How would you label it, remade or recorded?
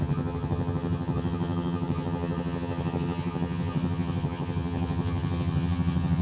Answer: remade